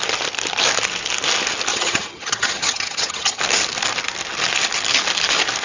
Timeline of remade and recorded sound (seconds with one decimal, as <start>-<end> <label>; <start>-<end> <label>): 0.0-1.7 recorded; 1.7-3.4 remade; 3.4-5.6 recorded